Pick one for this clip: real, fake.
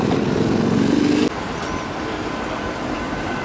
real